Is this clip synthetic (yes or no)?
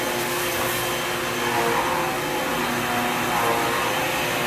no